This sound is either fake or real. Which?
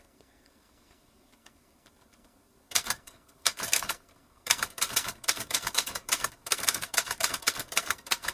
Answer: fake